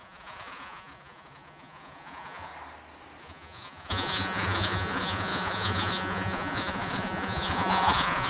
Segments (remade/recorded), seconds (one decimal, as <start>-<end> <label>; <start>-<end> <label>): 0.0-2.5 remade; 2.5-3.2 recorded; 3.2-8.3 remade

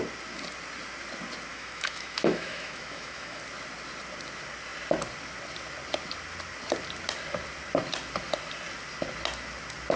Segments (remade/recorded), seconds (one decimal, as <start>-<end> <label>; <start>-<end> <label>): 0.0-1.5 recorded; 1.5-3.4 remade; 3.4-10.0 recorded

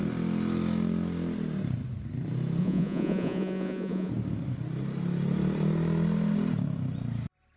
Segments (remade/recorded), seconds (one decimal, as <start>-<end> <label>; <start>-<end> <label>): 0.0-2.6 recorded; 2.6-4.1 remade; 4.1-7.6 recorded

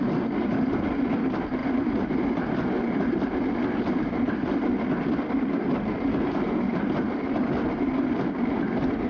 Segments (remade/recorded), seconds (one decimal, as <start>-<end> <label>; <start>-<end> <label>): 0.0-9.1 recorded

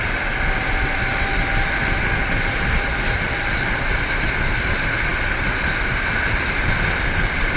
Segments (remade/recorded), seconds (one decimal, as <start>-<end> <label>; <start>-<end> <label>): 0.0-7.6 recorded